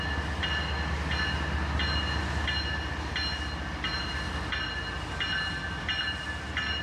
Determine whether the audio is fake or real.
real